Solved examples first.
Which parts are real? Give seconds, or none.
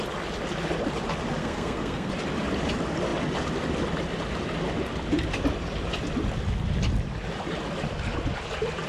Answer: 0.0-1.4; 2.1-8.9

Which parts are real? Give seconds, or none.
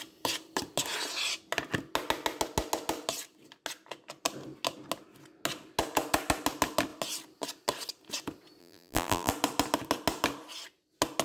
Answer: 0.0-8.6; 9.3-11.2